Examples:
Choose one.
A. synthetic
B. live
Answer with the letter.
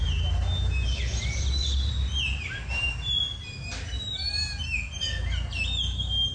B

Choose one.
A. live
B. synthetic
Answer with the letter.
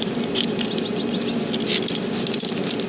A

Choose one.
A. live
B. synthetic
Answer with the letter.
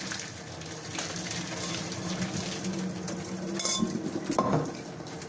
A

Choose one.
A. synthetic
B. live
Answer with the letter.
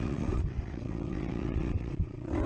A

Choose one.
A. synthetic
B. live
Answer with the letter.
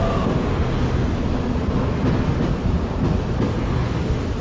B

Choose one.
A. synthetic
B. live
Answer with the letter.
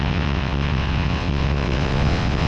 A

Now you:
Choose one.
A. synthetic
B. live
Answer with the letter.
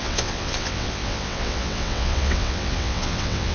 A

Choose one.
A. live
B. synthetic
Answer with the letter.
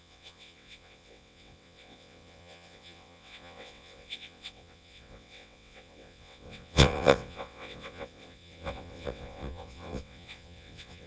B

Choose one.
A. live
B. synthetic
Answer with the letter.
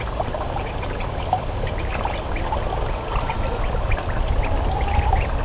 A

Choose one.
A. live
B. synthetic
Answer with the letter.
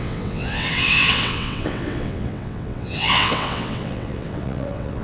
B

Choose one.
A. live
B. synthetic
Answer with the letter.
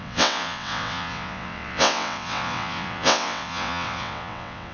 B